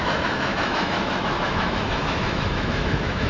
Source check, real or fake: fake